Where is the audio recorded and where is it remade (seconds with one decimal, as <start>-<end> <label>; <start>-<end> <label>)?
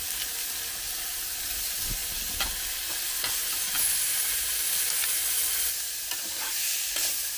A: 0.0-7.4 recorded